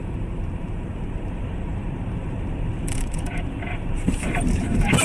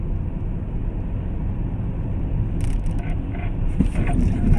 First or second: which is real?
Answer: second